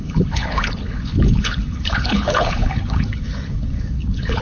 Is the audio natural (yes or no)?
no